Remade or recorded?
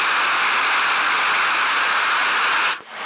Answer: recorded